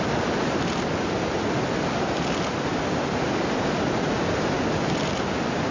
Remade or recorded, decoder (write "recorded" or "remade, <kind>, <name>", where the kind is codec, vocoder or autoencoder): recorded